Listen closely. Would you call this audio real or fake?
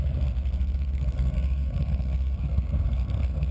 fake